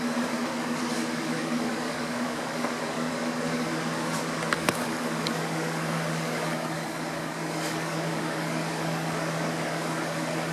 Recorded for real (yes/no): no